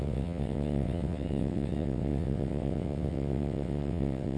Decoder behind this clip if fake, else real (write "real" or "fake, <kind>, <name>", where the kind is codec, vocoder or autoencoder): fake, vocoder, WaveNeXt